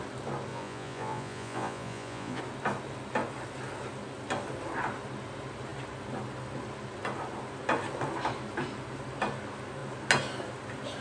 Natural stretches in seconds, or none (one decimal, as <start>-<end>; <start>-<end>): 0.0-0.5; 2.4-11.0